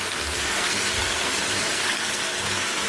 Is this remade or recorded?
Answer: remade